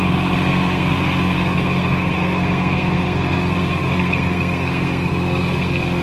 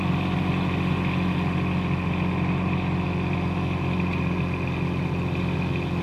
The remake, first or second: first